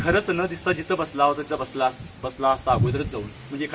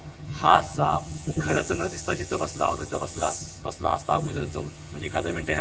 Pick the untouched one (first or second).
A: first